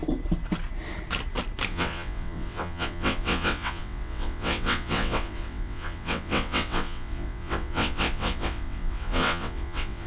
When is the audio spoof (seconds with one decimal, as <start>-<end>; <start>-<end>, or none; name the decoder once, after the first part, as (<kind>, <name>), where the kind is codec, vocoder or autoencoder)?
1.7-10.1 (vocoder, WaveNeXt)